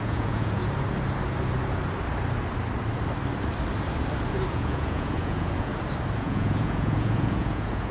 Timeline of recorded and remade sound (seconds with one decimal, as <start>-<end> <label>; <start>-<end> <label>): 0.0-0.6 remade; 0.6-4.5 recorded; 4.5-5.7 remade; 5.7-6.2 recorded; 6.2-7.9 remade